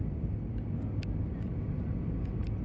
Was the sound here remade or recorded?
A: recorded